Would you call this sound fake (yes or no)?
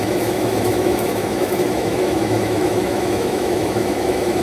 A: yes